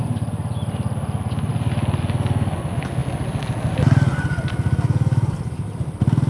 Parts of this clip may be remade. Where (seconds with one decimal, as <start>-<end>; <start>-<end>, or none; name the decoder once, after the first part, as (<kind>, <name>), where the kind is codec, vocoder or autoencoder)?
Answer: none